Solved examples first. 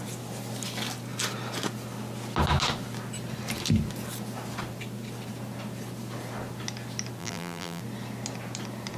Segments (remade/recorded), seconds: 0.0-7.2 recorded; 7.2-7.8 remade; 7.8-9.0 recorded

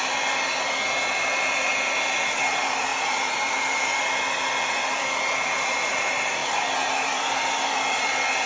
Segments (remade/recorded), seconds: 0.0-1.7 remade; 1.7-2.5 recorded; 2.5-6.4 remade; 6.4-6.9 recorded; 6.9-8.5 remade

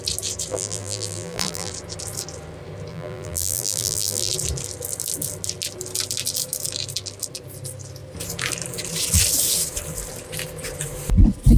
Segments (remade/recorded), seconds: 0.0-0.5 recorded; 0.5-1.7 remade; 1.7-2.9 recorded; 2.9-4.3 remade; 4.3-11.6 recorded